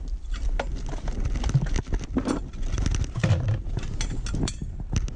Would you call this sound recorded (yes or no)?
yes